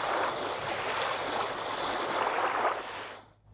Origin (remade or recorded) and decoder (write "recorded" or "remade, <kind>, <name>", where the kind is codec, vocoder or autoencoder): recorded